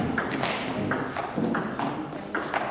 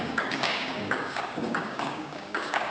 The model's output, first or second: second